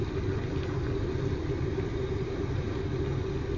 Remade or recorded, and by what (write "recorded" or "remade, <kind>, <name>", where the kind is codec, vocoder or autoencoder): recorded